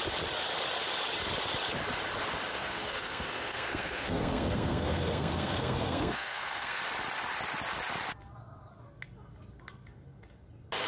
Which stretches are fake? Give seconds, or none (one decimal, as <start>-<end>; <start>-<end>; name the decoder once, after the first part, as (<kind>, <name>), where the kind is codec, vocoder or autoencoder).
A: 2.5-6.8 (codec, SNAC)